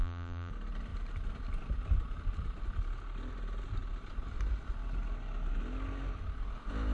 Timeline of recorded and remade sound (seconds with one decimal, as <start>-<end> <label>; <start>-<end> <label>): 0.0-0.5 remade; 0.5-6.9 recorded